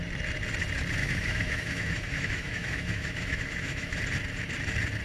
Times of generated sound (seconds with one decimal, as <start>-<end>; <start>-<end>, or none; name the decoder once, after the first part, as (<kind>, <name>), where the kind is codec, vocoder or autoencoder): 1.0-4.0 (autoencoder, DAC-VAE)